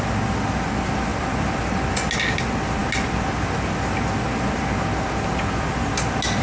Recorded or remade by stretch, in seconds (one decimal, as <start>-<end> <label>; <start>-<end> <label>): 0.0-6.4 recorded

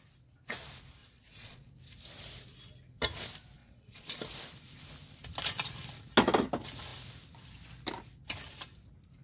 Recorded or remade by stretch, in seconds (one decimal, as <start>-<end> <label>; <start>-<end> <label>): 0.0-1.0 recorded; 1.0-1.7 remade; 1.7-3.6 recorded; 3.6-4.2 remade; 4.2-9.2 recorded